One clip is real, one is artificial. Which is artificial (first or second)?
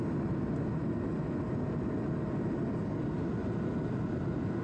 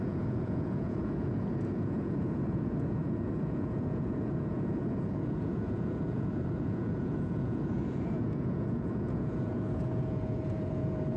second